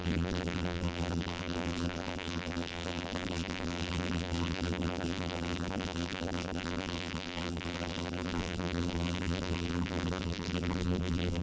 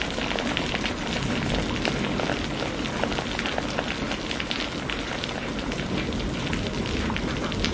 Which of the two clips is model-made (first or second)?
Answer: first